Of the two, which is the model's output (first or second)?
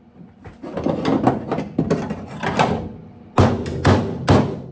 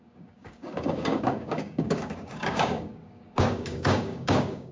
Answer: second